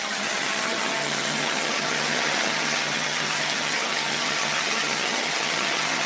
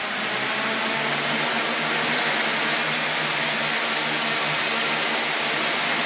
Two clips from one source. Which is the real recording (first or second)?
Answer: second